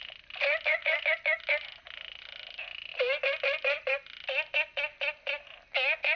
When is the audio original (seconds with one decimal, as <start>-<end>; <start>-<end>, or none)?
0.0-6.2